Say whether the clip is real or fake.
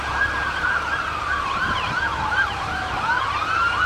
real